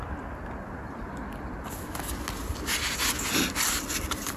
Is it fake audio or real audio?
real